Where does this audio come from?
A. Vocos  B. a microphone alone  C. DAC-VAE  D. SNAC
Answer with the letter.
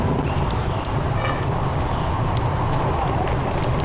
B